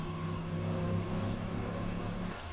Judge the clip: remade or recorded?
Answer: remade